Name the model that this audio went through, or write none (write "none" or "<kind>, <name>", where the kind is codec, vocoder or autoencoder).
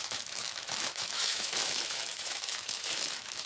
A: autoencoder, DAC-VAE